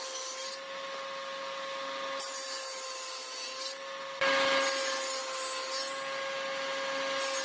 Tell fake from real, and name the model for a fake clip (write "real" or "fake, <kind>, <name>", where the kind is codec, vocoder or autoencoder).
real